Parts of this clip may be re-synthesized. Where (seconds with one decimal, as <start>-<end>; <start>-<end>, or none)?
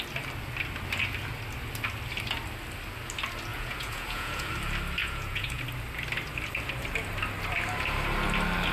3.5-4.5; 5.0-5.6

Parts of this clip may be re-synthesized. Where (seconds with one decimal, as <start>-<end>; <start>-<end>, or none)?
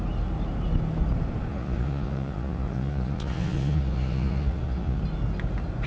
1.5-5.0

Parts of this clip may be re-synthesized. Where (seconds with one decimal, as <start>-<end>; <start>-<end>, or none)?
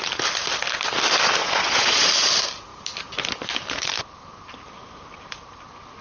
1.4-2.1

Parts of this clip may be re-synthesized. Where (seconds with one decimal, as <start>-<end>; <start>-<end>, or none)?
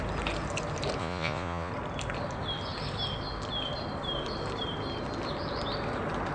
1.0-1.7